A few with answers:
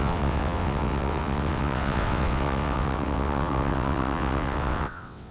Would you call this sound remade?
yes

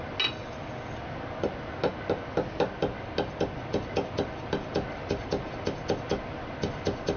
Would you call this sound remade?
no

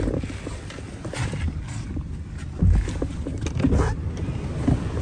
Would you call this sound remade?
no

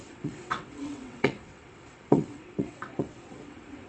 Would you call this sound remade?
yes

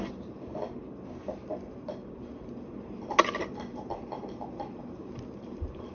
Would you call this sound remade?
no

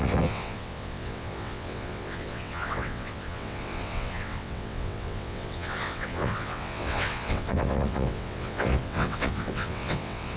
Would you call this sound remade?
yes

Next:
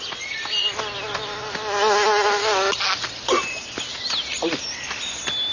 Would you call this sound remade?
no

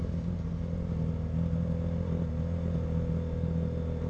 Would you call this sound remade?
no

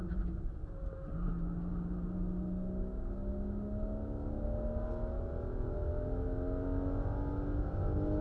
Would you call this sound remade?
no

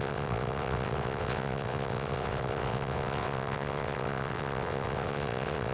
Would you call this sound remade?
yes